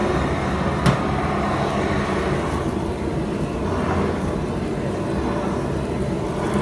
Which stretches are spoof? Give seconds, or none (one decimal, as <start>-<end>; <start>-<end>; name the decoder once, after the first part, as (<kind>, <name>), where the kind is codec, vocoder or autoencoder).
none

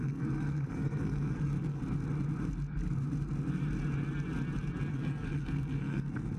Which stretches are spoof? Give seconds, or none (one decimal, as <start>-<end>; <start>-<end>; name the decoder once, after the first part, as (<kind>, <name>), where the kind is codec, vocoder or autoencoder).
0.0-1.8 (codec, SNAC); 4.9-6.4

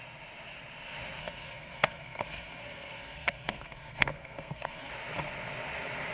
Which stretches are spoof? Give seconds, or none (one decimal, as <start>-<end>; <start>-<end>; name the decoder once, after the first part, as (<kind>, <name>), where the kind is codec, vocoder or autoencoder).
1.2-4.9 (codec, SNAC)